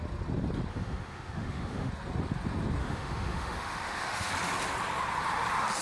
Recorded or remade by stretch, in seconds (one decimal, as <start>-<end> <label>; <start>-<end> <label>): 0.0-0.7 recorded; 0.7-1.9 remade; 1.9-2.8 recorded; 2.8-4.3 remade; 4.3-5.8 recorded